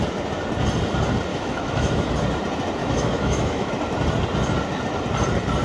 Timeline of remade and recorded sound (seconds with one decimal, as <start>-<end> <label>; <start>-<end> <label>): 0.0-1.3 recorded; 1.3-2.1 remade; 2.1-2.8 recorded; 2.8-3.7 remade; 3.7-5.6 recorded

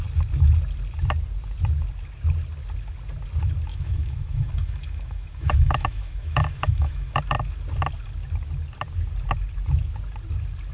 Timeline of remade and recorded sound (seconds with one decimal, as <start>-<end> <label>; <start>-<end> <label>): 0.0-3.7 recorded; 3.7-7.2 remade; 7.2-10.7 recorded

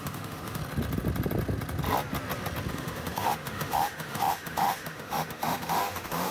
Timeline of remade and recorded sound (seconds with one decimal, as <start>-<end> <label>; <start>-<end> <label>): 0.0-0.6 remade; 0.6-2.7 recorded; 2.7-6.3 remade

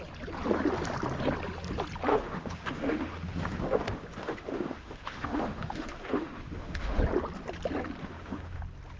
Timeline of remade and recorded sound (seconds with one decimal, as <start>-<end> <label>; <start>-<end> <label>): 0.0-2.1 recorded; 2.1-7.0 remade; 7.0-8.0 recorded; 8.0-8.6 remade; 8.6-9.0 recorded

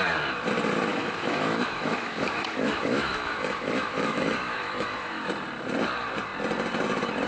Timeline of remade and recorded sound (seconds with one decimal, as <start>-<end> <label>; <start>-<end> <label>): 0.0-0.9 recorded; 0.9-5.3 remade; 5.3-7.3 recorded

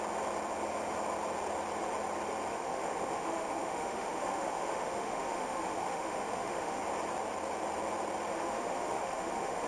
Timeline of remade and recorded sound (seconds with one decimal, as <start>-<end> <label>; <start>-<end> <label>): 0.0-2.5 recorded; 2.5-6.8 remade; 6.8-8.3 recorded; 8.3-9.7 remade

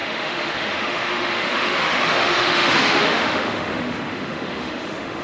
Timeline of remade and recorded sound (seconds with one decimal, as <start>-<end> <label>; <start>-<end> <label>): 0.0-5.2 remade